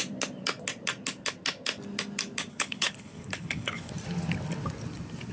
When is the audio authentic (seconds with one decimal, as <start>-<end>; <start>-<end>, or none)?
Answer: 0.0-2.5; 3.9-5.3